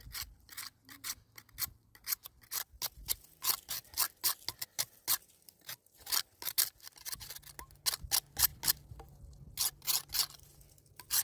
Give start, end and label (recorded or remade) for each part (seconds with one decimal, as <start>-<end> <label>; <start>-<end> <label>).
0.0-11.2 recorded